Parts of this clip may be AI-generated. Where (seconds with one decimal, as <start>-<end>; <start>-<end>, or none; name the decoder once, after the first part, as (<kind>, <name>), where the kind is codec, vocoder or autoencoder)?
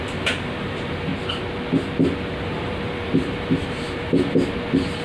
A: 0.0-1.1 (vocoder, BigVGAN v2); 2.4-5.0